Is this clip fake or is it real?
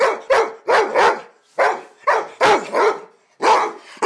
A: real